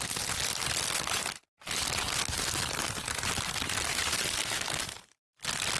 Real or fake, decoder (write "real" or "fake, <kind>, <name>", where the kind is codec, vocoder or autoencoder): real